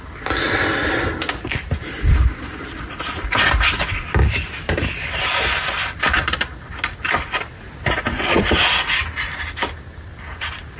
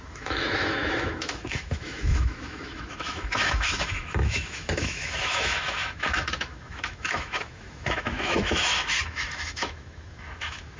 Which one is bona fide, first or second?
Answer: first